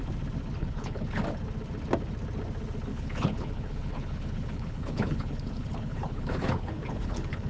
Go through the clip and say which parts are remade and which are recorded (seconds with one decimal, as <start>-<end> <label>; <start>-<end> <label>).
0.0-0.6 recorded; 0.6-1.2 remade; 1.2-2.9 recorded; 2.9-7.5 remade